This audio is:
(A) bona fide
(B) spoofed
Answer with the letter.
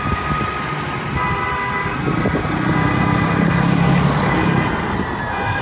A